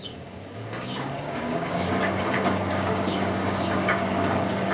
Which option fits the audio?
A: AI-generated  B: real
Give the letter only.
A